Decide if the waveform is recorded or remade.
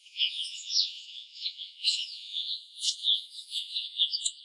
remade